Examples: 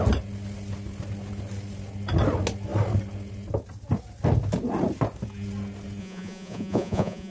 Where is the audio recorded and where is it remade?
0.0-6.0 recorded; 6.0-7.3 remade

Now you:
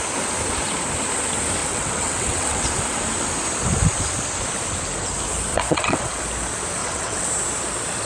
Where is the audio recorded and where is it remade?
0.0-1.6 recorded; 1.6-2.6 remade; 2.6-5.5 recorded; 5.5-6.2 remade; 6.2-6.8 recorded; 6.8-7.3 remade; 7.3-8.1 recorded

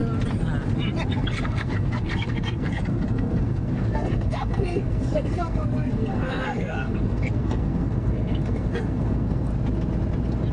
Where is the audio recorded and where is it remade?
0.0-1.1 recorded; 1.1-9.5 remade; 9.5-10.5 recorded

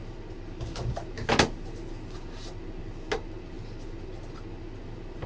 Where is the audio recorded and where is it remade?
0.0-5.3 recorded

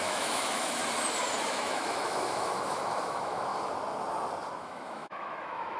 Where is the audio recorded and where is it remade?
0.0-0.8 remade; 0.8-1.5 recorded; 1.5-3.5 remade; 3.5-4.6 recorded; 4.6-5.8 remade

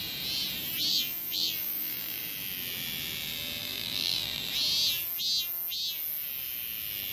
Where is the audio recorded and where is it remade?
0.0-0.9 recorded; 0.9-2.2 remade; 2.2-3.6 recorded; 3.6-4.5 remade; 4.5-7.1 recorded